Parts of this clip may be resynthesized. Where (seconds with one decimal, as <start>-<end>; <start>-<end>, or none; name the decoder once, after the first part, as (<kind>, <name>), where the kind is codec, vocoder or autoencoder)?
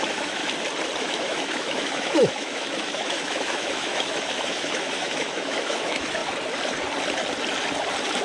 0.0-0.4 (autoencoder, DAC-VAE); 1.0-6.2